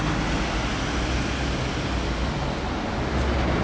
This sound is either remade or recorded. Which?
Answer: recorded